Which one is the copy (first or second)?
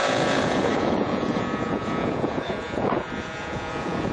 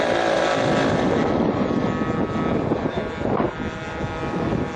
first